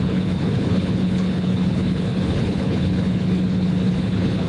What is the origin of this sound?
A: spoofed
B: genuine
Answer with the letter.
A